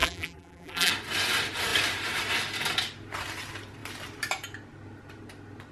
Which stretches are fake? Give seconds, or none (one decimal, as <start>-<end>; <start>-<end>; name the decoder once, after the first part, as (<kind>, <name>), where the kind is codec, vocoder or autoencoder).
0.0-0.9 (vocoder, BigVGAN v2)